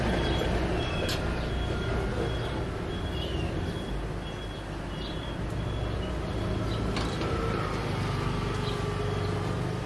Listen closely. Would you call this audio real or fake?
real